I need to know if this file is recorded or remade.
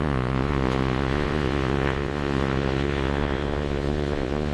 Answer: remade